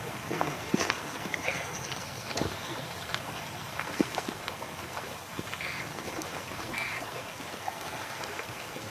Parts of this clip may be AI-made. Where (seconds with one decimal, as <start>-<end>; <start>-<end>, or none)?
0.0-8.9